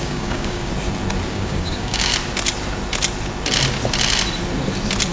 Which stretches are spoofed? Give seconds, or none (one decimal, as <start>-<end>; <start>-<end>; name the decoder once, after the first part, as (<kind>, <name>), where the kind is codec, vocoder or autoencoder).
0.0-0.7 (codec, DAC); 1.3-2.1